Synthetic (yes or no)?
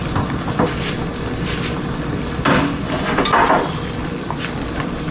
no